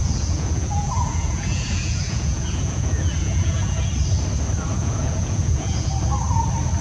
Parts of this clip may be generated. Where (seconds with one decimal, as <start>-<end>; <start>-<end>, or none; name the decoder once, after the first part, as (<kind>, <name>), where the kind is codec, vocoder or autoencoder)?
0.0-3.9 (vocoder, Vocos); 4.7-5.9